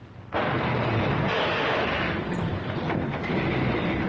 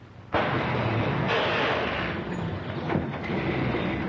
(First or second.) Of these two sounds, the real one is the second